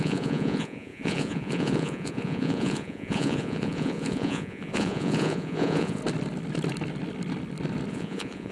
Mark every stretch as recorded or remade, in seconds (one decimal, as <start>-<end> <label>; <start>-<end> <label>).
0.0-6.0 remade; 6.0-7.9 recorded; 7.9-8.5 remade